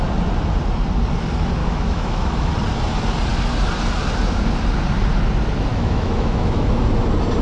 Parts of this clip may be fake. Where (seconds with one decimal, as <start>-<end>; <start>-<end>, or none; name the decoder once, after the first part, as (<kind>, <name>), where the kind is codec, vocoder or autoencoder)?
1.6-2.5 (autoencoder, DAC-VAE); 5.7-6.8